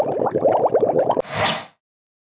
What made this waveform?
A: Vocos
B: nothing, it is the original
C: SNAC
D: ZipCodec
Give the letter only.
B